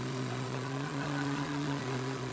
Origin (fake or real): fake